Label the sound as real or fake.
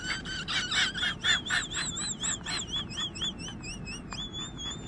real